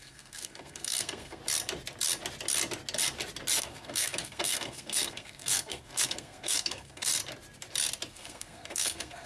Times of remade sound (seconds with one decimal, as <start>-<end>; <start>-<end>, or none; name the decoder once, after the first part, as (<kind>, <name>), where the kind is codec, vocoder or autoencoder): 0.0-1.4 (codec, SNAC); 3.6-7.1; 8.1-9.3